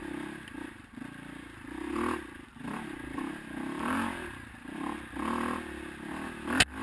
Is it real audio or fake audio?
real